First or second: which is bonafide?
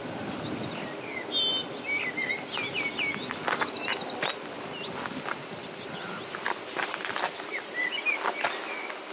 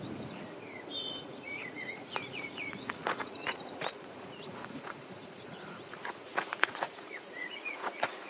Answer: first